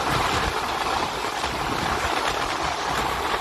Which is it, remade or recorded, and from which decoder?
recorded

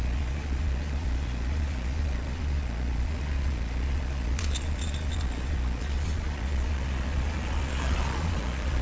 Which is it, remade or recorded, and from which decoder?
remade, vocoder, Vocos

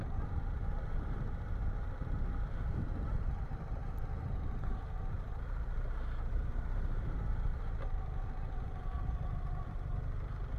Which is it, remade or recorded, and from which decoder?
remade, vocoder, BigVGAN v2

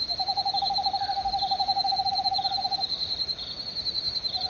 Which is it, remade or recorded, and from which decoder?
remade, vocoder, BigVGAN v2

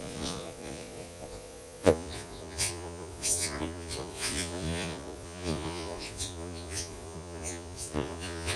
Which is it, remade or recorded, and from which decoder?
remade, vocoder, Vocos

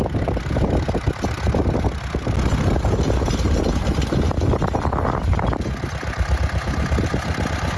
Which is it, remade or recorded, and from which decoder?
recorded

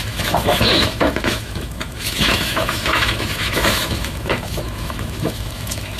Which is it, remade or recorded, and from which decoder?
remade, autoencoder, DAC-VAE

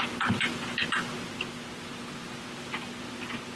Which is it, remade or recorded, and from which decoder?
recorded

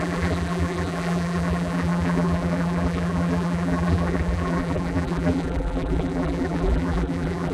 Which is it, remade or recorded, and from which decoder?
remade, vocoder, BigVGAN v2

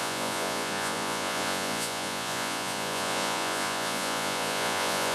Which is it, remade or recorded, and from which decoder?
remade, vocoder, Vocos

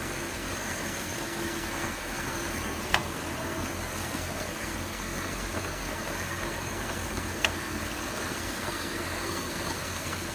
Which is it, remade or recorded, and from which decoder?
remade, codec, SNAC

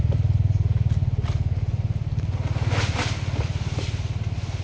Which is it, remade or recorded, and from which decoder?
recorded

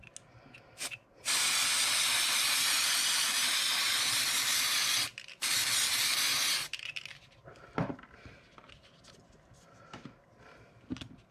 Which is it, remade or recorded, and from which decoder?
recorded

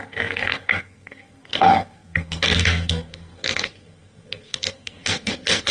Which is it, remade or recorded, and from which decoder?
remade, codec, SNAC